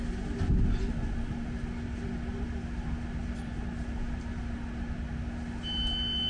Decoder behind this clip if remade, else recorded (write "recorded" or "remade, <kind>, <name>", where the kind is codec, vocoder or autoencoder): recorded